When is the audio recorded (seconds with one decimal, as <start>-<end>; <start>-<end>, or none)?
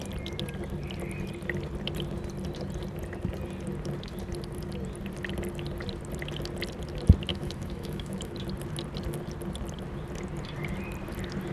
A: 0.0-7.3; 8.3-11.5